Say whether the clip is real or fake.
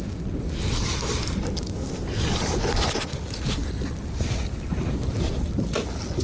real